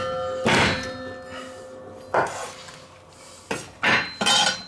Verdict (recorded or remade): recorded